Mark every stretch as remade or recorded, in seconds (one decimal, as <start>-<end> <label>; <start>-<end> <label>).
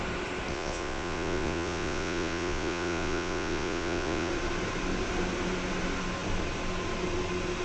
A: 0.0-0.5 recorded; 0.5-4.3 remade; 4.3-7.6 recorded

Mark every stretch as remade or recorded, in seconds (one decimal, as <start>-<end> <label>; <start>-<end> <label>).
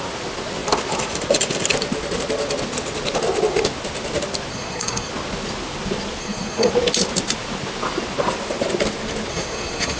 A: 0.0-4.5 recorded; 4.5-5.1 remade; 5.1-6.2 recorded; 6.2-6.7 remade; 6.7-9.3 recorded; 9.3-10.0 remade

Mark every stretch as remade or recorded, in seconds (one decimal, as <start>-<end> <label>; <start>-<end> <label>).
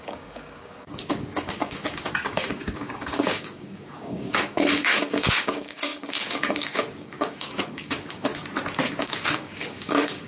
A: 0.0-8.3 remade; 8.3-9.0 recorded; 9.0-10.3 remade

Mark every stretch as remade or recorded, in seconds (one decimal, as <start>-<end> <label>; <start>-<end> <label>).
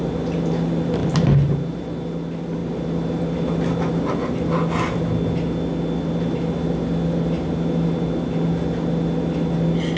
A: 0.0-10.0 recorded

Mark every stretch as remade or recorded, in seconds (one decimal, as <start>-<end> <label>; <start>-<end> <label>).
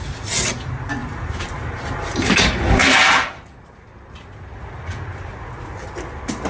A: 0.0-1.0 recorded; 1.0-2.4 remade; 2.4-6.5 recorded